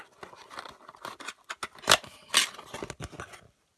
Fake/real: real